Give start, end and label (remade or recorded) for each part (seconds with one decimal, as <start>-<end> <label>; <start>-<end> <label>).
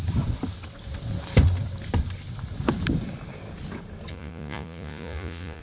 0.0-4.1 recorded; 4.1-5.6 remade